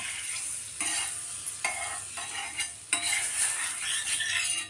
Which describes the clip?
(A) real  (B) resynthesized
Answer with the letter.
A